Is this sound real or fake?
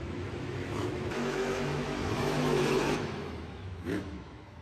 fake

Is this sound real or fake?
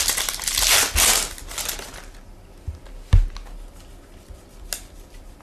real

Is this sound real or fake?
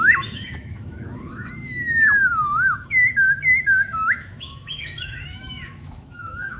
fake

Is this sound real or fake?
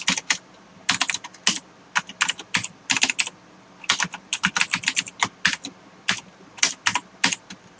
real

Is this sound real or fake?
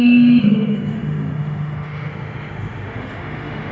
fake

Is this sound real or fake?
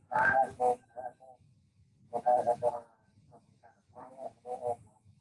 fake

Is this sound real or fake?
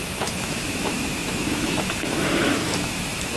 fake